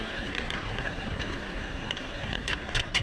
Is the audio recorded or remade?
remade